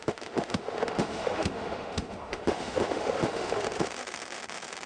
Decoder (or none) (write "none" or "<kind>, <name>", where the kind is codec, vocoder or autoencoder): autoencoder, DAC-VAE